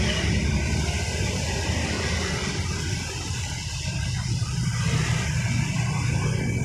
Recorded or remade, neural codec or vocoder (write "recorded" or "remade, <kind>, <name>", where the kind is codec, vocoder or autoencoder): recorded